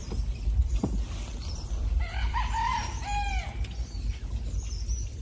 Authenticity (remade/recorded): recorded